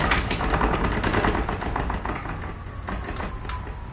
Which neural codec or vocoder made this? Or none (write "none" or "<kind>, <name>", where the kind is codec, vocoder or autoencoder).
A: none